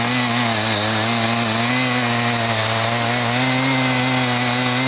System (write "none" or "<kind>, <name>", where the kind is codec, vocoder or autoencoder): none